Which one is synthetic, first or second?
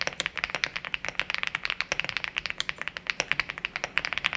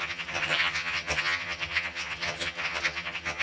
second